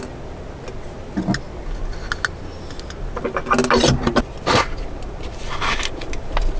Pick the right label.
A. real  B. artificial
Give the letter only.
A